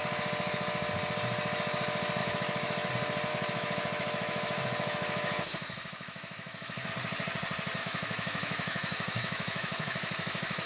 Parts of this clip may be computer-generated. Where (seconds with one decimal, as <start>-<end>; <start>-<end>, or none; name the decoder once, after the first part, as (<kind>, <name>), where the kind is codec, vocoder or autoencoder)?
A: 2.2-2.9 (autoencoder, DAC-VAE); 3.3-6.9; 7.8-10.7